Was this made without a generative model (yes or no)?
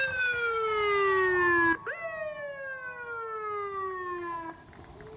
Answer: yes